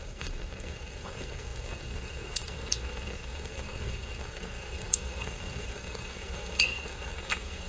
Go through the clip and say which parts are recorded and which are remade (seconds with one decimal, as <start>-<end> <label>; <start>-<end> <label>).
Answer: 0.0-7.7 remade